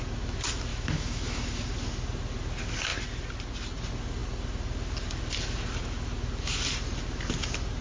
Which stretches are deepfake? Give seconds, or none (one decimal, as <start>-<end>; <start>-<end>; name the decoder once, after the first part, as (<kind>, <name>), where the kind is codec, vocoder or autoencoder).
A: 0.7-1.7 (autoencoder, DAC-VAE)